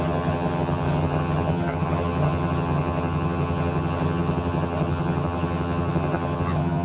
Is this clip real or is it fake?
fake